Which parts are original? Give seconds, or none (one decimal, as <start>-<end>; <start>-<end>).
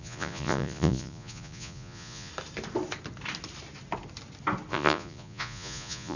2.3-4.7